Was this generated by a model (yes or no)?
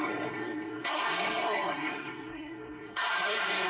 yes